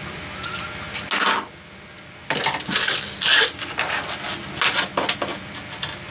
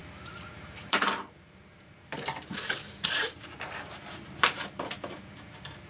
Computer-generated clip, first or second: second